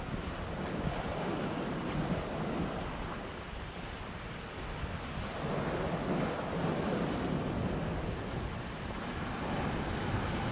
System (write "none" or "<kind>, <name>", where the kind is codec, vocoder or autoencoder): none